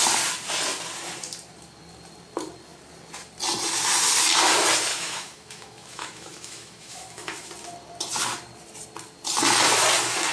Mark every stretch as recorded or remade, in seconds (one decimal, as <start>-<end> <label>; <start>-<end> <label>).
0.0-4.9 recorded; 4.9-7.5 remade; 7.5-10.3 recorded